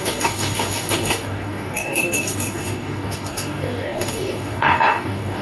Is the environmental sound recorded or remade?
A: remade